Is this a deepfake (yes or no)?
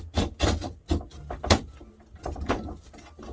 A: no